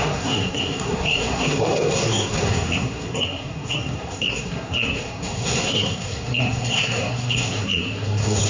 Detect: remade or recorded remade